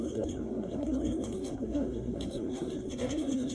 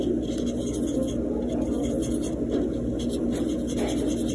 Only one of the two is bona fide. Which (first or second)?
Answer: second